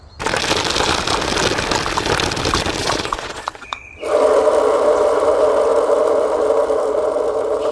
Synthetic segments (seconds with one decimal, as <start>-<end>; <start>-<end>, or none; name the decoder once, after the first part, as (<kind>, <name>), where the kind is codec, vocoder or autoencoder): 2.8-3.9 (vocoder, Vocos)